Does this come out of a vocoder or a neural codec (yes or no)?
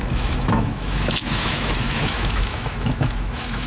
yes